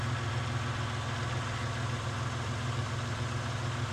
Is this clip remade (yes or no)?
no